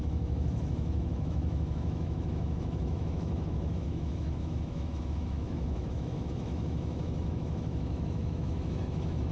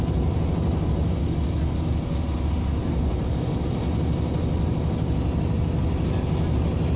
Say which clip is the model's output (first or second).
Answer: first